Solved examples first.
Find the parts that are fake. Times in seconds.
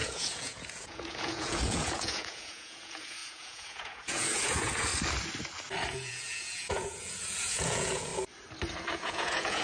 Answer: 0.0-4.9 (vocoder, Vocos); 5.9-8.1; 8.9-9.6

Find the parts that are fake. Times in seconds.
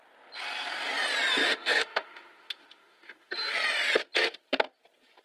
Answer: 1.4-3.3 (autoencoder, DAC-VAE)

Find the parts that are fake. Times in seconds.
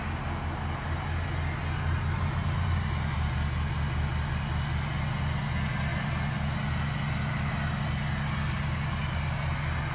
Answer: none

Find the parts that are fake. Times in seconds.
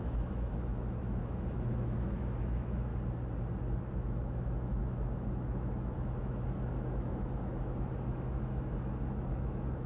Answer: 0.0-2.9 (autoencoder, DAC-VAE); 3.9-9.9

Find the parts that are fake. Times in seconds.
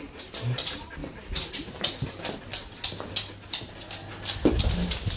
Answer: none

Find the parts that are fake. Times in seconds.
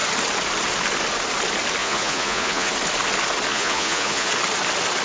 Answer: 1.8-2.7 (vocoder, Vocos); 3.5-4.3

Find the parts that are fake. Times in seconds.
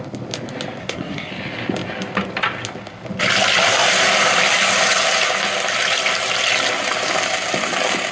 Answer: 0.8-1.3 (codec, SNAC)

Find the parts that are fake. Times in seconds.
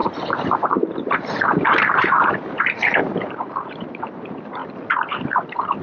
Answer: 0.0-4.6 (vocoder, BigVGAN v2); 5.1-5.8